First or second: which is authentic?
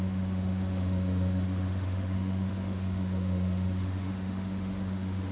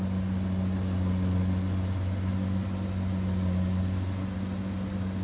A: second